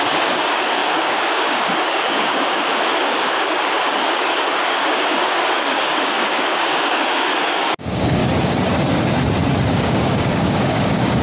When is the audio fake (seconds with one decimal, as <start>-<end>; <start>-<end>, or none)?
0.0-8.2; 9.7-11.2